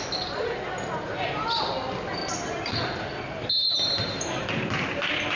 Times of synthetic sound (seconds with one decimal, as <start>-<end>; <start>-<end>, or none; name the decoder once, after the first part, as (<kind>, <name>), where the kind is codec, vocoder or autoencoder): none